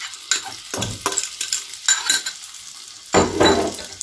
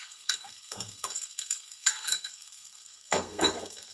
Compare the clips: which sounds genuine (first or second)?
first